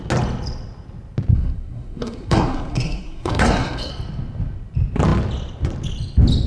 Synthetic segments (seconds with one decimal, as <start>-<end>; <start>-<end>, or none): 1.3-3.9